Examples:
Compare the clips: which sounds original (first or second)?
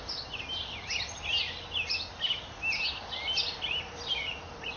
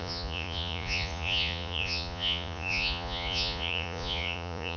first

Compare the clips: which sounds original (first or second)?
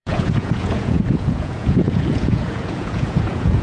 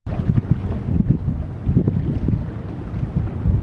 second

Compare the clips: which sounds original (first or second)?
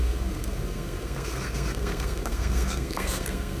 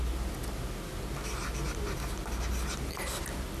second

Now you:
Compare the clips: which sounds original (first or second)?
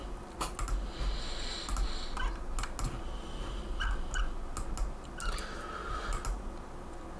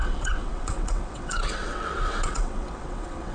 first